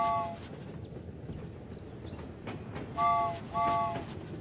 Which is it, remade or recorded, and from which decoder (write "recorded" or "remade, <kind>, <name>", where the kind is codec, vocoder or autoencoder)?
recorded